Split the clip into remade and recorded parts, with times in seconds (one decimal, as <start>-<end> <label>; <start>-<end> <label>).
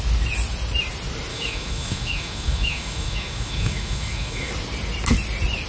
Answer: 0.0-1.3 recorded; 1.3-4.5 remade; 4.5-5.7 recorded